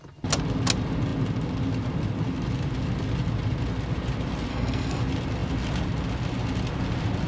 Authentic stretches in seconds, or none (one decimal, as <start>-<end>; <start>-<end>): 0.0-4.5; 5.0-7.3